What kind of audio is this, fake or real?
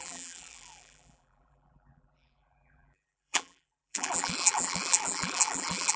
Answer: fake